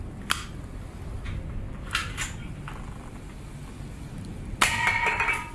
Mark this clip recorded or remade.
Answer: recorded